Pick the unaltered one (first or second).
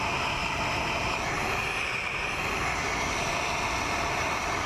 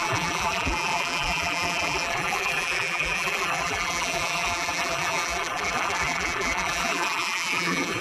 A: first